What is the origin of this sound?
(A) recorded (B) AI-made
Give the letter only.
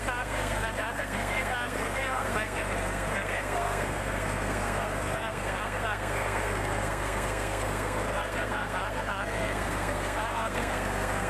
B